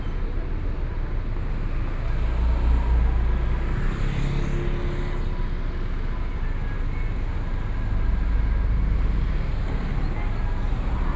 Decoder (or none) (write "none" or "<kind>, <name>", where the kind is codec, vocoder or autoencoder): none